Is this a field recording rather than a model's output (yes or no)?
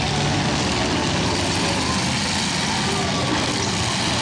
yes